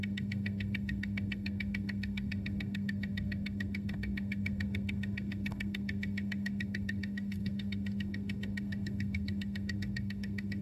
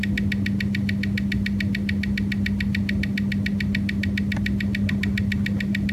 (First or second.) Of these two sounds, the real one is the second